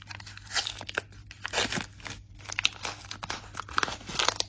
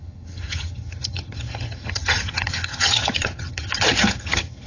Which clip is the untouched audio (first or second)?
first